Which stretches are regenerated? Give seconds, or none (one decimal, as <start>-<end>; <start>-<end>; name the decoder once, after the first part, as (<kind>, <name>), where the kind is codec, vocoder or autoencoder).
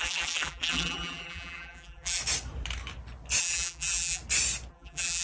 0.0-2.2 (vocoder, BigVGAN v2); 3.4-4.2; 4.7-5.2